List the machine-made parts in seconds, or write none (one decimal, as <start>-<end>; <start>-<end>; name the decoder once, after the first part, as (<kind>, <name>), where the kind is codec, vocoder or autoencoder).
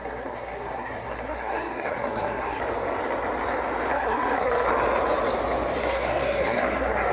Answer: 0.0-2.6 (codec, SNAC); 3.9-4.7; 5.8-7.1